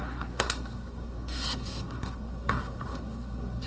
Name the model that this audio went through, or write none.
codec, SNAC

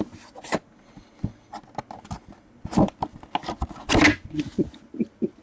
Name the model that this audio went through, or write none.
none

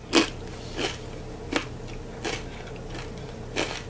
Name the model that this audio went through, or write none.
none